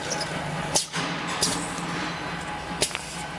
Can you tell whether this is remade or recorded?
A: recorded